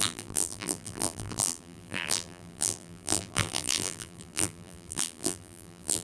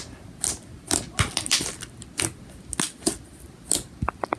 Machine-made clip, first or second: first